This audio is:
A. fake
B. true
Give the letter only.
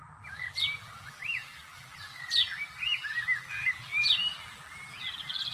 A